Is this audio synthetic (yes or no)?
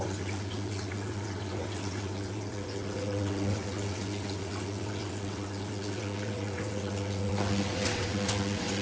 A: yes